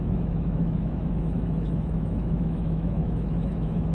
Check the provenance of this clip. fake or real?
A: fake